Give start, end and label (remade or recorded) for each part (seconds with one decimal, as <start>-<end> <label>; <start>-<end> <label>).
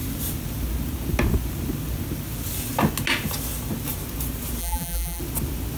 0.0-4.6 recorded; 4.6-5.2 remade; 5.2-5.8 recorded